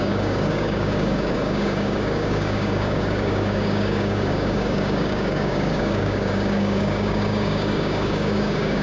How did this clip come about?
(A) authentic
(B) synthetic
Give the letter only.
B